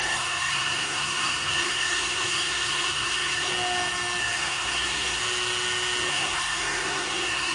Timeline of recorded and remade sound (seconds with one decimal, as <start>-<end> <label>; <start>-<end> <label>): 0.0-3.5 remade; 3.5-4.2 recorded; 4.2-5.2 remade; 5.2-6.1 recorded; 6.1-7.5 remade